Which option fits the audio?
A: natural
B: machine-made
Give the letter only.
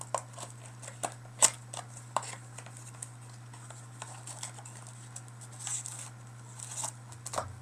A